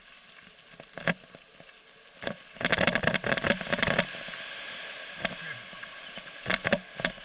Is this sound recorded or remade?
recorded